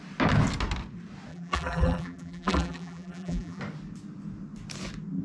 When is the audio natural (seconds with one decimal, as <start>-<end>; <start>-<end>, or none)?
0.0-1.3; 3.6-5.2